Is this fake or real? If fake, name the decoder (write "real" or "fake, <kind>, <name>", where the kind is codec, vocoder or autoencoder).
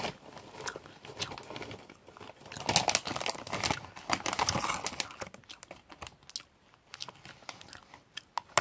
real